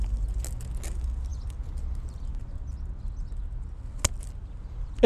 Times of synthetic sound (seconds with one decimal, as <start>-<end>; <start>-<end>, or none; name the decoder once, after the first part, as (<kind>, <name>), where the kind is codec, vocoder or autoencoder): none